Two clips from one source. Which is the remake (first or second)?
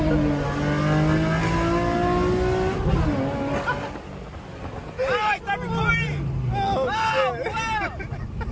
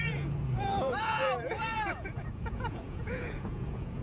second